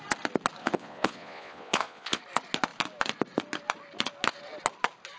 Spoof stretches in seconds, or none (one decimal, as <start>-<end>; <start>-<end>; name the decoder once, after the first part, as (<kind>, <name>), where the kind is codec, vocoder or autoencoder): 0.6-2.2 (vocoder, Vocos)